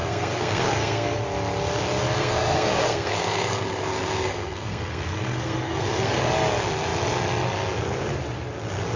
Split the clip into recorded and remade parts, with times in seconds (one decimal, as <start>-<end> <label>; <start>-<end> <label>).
0.0-1.2 remade; 1.2-2.2 recorded; 2.2-6.3 remade; 6.3-9.0 recorded